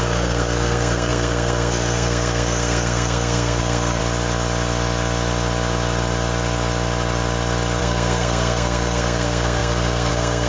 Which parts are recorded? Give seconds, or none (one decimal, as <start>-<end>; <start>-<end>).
4.0-7.8